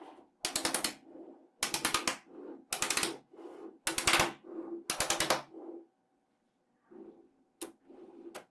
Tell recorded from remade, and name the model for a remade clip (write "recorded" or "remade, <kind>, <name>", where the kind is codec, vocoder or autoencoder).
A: recorded